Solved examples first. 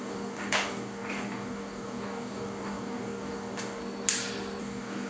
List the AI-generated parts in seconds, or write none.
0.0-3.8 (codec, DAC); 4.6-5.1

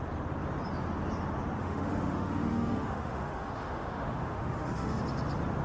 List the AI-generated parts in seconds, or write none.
1.6-5.0 (autoencoder, DAC-VAE)

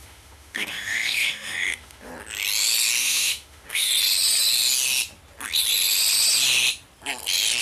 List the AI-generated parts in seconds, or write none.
0.0-2.1 (autoencoder, DAC-VAE); 3.0-3.9

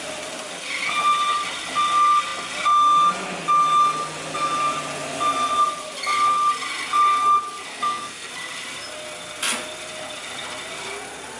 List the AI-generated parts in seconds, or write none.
7.7-8.3 (codec, SNAC)